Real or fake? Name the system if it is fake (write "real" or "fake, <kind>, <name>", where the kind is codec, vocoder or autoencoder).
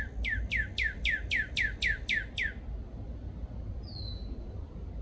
real